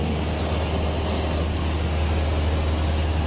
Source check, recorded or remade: recorded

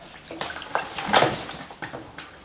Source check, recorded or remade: recorded